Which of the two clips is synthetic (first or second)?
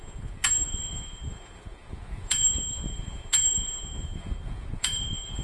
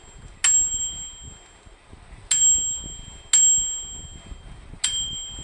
first